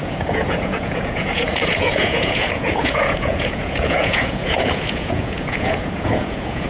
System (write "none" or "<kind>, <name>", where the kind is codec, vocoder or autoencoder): vocoder, Vocos